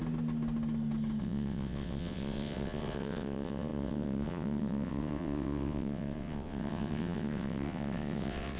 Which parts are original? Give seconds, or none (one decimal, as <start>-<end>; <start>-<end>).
0.0-1.2

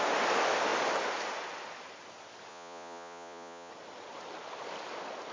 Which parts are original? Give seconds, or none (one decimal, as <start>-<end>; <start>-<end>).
0.0-2.5; 3.7-5.3

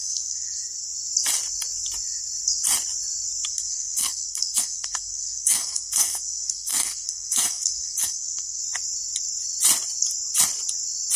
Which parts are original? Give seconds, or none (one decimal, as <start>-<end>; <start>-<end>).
0.6-3.5; 8.6-11.2